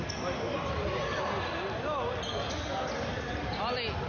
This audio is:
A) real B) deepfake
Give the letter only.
A